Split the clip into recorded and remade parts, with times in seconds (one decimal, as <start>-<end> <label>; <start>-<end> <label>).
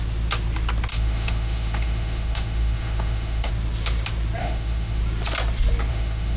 0.0-0.9 recorded; 0.9-3.5 remade; 3.5-4.4 recorded; 4.4-5.0 remade; 5.0-5.9 recorded; 5.9-6.4 remade